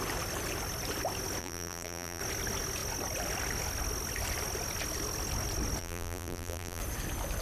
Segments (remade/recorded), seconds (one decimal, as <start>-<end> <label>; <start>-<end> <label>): 0.0-1.4 recorded; 1.4-2.2 remade; 2.2-5.8 recorded; 5.8-6.8 remade; 6.8-7.4 recorded